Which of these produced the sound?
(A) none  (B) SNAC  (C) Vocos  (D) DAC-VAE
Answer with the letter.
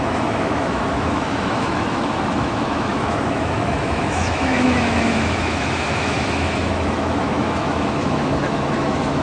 D